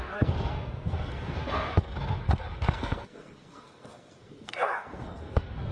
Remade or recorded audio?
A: remade